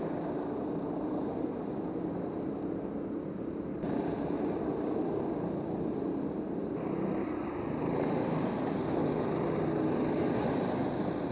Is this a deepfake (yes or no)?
no